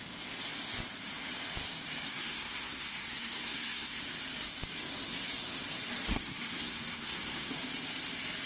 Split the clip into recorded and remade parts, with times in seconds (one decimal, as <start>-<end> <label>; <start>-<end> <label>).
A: 0.0-2.1 recorded; 2.1-4.0 remade; 4.0-6.1 recorded; 6.1-7.5 remade; 7.5-8.5 recorded